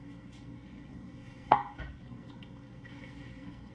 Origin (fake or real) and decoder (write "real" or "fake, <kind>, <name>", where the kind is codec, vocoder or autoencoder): fake, codec, SNAC